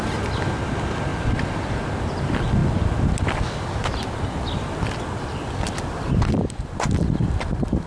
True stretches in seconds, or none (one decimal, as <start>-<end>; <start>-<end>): 0.0-7.9